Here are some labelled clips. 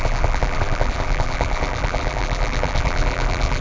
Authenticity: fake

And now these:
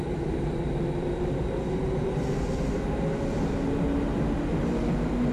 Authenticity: real